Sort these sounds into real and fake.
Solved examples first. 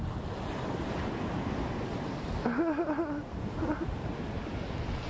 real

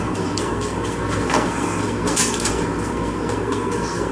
fake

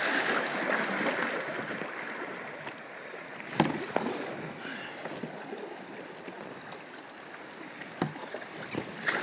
real